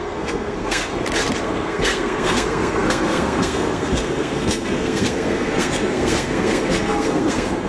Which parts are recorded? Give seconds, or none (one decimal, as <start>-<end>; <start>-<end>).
0.9-1.4